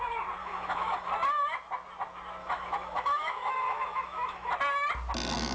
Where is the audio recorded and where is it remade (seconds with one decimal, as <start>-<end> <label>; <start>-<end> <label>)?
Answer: 0.0-0.4 recorded; 0.4-1.1 remade; 1.1-2.4 recorded; 2.4-4.5 remade; 4.5-5.5 recorded